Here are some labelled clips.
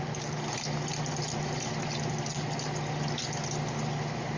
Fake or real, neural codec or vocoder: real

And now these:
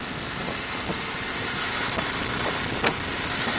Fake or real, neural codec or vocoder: real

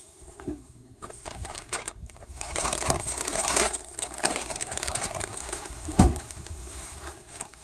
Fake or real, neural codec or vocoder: fake, codec, SNAC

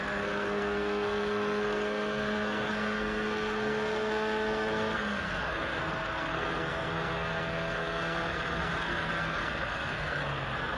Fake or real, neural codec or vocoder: fake, codec, SNAC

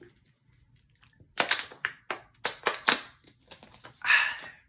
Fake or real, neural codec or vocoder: real